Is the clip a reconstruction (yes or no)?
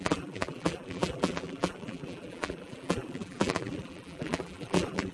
yes